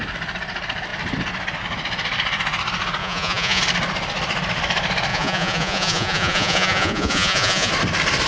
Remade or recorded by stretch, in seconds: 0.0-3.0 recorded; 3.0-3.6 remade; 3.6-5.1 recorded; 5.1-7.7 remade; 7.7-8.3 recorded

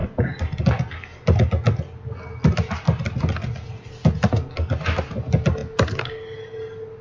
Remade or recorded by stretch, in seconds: 0.0-7.0 recorded

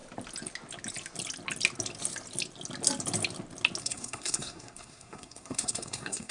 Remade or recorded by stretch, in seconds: 0.0-3.8 recorded; 3.8-6.3 remade